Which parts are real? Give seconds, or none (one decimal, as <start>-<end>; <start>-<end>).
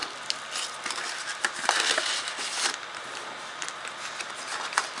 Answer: 0.0-3.0